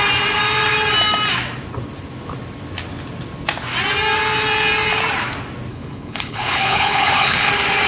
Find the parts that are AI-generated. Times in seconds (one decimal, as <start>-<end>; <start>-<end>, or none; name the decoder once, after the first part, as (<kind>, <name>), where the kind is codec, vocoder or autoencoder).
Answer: 5.7-7.5 (codec, HILCodec)